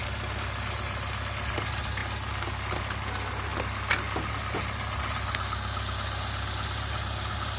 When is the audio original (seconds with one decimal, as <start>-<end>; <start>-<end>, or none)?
0.0-7.6